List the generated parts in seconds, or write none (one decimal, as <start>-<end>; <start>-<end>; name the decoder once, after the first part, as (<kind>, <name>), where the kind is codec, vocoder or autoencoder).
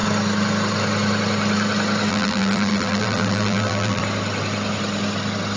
2.1-4.0 (vocoder, BigVGAN v2)